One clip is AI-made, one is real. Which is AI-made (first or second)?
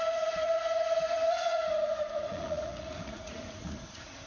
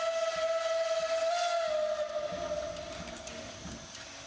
first